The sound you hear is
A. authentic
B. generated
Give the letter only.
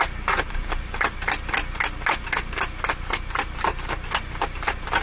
A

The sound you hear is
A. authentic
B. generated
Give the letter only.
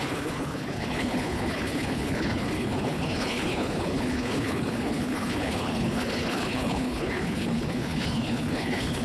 B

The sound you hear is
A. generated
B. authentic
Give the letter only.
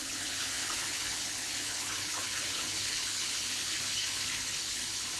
A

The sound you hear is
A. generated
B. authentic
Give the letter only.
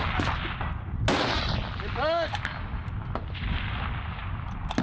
B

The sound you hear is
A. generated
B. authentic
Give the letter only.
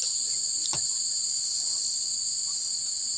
B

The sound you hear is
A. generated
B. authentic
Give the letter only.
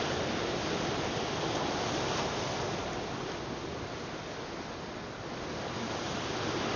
B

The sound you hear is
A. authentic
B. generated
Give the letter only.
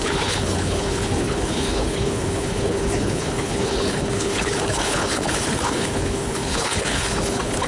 B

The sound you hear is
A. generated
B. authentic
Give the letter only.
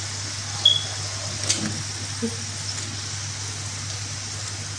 B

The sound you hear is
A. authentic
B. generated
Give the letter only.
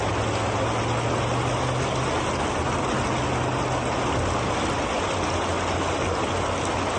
A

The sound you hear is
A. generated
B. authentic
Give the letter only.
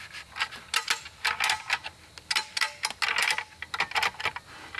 B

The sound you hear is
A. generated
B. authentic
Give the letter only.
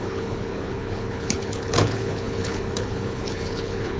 A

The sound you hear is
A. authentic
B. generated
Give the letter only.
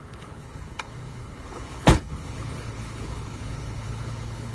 B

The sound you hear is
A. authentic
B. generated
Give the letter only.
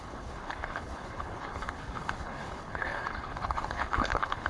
B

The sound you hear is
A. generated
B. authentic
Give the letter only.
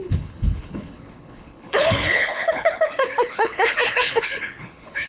A